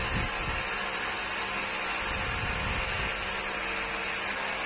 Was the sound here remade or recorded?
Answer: recorded